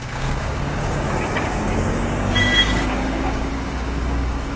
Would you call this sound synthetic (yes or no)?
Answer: yes